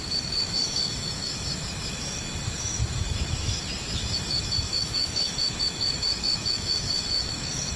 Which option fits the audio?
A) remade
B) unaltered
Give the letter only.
A